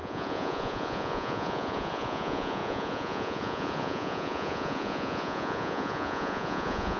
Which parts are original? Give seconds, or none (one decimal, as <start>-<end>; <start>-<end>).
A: none